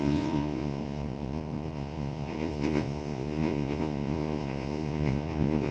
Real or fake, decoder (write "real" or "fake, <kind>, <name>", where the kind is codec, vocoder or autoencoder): fake, vocoder, Vocos